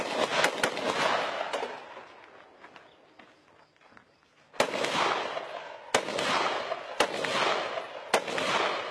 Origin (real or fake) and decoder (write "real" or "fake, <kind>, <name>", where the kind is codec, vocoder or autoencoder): real